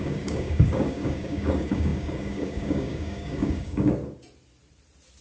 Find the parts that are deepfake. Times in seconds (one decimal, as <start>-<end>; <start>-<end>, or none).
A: 0.0-4.0